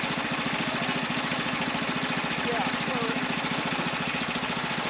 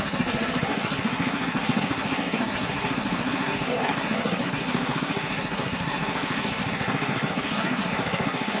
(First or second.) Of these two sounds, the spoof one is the second